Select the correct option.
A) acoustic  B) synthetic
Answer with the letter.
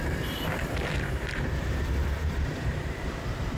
B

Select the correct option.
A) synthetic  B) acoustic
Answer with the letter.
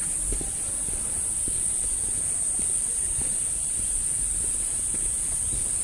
A